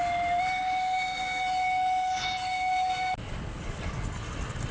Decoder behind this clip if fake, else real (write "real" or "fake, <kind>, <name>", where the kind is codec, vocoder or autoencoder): real